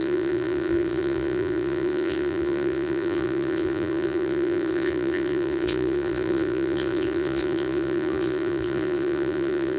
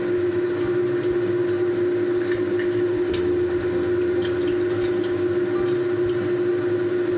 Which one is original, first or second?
second